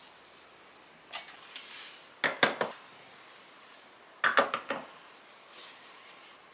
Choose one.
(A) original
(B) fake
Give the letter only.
A